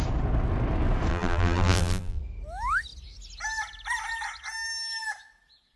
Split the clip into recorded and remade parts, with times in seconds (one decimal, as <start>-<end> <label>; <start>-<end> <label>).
0.0-1.1 recorded; 1.1-2.2 remade; 2.2-5.8 recorded